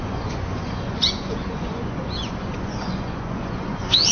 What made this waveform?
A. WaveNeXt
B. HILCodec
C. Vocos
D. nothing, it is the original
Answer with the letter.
C